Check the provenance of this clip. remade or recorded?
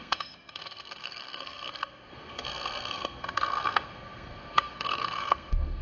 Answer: remade